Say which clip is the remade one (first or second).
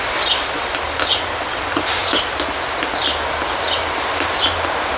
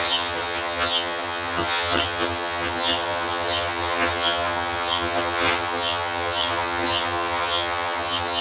second